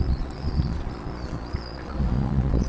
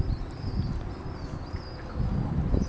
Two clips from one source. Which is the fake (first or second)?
first